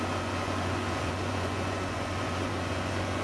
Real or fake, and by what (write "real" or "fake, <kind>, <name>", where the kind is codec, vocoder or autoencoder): fake, vocoder, Vocos